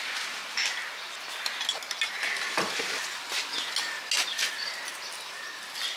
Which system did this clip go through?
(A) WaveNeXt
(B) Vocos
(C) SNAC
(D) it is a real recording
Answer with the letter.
D